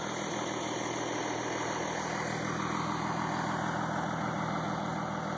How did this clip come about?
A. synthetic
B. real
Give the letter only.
B